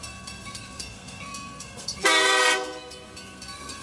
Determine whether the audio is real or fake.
fake